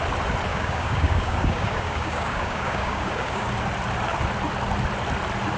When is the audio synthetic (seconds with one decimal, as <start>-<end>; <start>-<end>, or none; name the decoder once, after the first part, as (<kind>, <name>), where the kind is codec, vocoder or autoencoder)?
0.5-3.5 (codec, DAC)

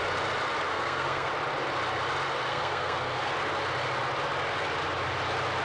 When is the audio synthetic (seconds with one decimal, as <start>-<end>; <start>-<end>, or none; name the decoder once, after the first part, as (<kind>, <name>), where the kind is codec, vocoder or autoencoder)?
0.7-1.3 (codec, SNAC); 2.5-3.3

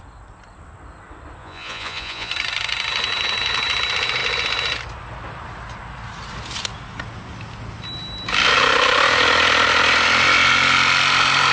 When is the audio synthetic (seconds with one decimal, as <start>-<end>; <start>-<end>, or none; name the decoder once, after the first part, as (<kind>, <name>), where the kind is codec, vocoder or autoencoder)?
1.4-2.3 (vocoder, Vocos)

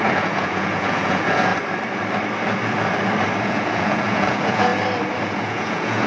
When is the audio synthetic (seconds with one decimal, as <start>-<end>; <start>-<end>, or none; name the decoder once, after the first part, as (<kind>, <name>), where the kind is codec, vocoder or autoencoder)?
0.0-1.5 (vocoder, Vocos); 3.4-4.7; 5.2-6.1

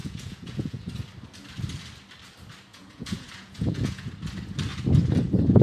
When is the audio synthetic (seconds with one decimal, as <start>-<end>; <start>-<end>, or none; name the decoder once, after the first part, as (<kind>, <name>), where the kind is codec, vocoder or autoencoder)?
0.0-0.9 (vocoder, Vocos); 2.7-4.1

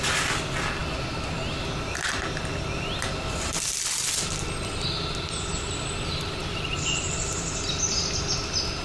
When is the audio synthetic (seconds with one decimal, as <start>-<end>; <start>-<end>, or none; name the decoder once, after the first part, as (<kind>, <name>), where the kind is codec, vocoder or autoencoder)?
6.4-7.1 (vocoder, BigVGAN v2)